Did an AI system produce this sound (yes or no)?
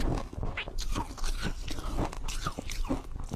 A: no